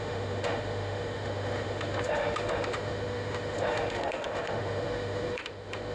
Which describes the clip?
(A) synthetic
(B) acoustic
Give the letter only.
A